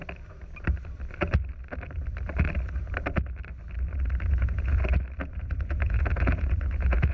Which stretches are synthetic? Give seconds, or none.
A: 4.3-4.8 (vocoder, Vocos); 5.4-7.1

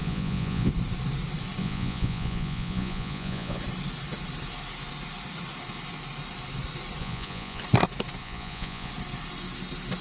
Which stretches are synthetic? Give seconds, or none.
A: 0.0-0.7 (vocoder, Vocos); 1.6-3.6; 7.0-7.6; 8.2-8.9

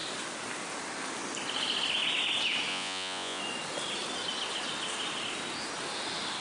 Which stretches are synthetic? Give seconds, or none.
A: 2.7-3.4 (vocoder, Vocos)

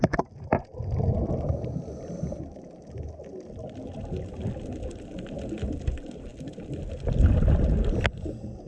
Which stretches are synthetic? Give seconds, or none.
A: none

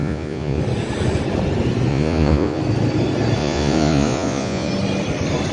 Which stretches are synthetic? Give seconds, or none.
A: 0.0-0.6 (vocoder, Vocos); 1.9-2.6; 3.4-4.7